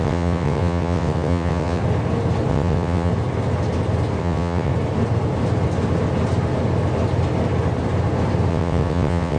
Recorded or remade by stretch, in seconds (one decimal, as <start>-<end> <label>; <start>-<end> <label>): 0.0-1.8 remade; 1.8-2.5 recorded; 2.5-3.1 remade; 3.1-4.2 recorded; 4.2-4.7 remade; 4.7-8.5 recorded; 8.5-9.4 remade